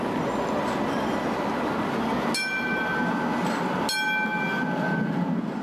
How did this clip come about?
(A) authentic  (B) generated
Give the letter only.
A